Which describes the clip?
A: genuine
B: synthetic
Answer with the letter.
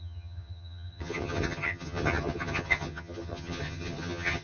B